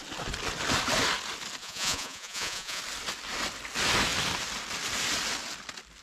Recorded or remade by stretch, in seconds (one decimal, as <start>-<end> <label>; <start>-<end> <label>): 0.0-1.6 recorded; 1.6-2.8 remade; 2.8-6.0 recorded